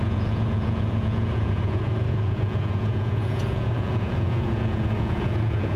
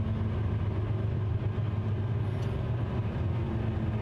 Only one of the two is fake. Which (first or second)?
first